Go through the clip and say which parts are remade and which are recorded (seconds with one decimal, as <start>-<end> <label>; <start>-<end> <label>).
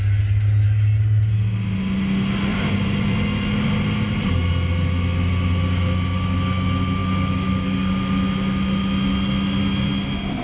0.0-2.5 recorded; 2.5-3.7 remade; 3.7-10.4 recorded